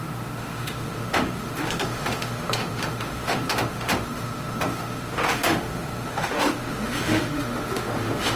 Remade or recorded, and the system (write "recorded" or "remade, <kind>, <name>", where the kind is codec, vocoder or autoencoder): remade, autoencoder, DAC-VAE